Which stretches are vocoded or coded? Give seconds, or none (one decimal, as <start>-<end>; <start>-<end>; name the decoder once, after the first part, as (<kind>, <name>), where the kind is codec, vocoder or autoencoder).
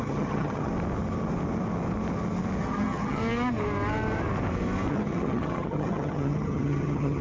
0.0-0.7 (vocoder, HiFi-GAN); 2.6-3.2; 4.9-7.2